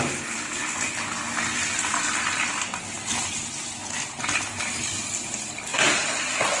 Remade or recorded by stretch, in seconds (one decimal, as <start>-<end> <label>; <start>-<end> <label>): 0.0-6.6 recorded